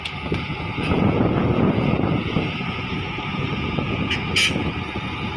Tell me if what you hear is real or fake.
fake